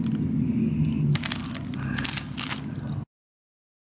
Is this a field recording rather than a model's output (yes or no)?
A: yes